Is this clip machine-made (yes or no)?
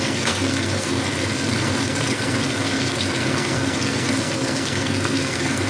yes